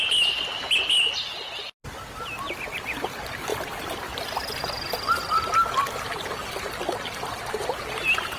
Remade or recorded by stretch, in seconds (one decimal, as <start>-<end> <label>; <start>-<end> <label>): 0.0-3.5 recorded; 3.5-7.9 remade; 7.9-8.4 recorded